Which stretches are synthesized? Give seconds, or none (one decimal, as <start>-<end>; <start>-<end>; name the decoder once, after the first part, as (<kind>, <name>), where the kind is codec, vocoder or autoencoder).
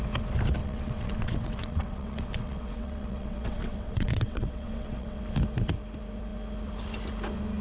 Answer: 0.6-5.2 (vocoder, WaveNeXt)